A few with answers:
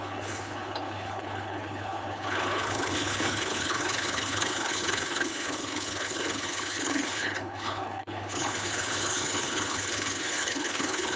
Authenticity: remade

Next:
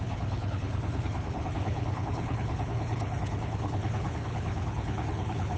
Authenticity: remade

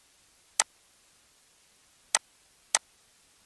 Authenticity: recorded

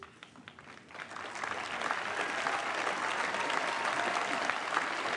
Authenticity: recorded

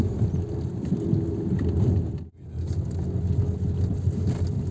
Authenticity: recorded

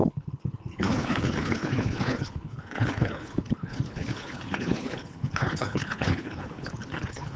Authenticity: remade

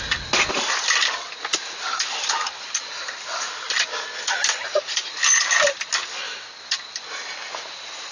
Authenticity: recorded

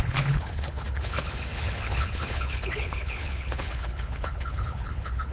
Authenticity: remade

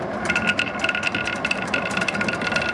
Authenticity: recorded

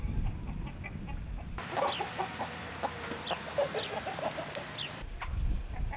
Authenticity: recorded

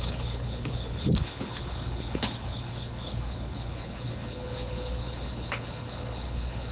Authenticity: remade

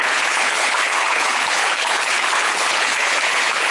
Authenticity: remade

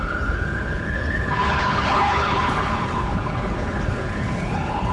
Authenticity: remade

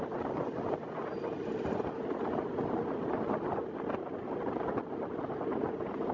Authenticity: recorded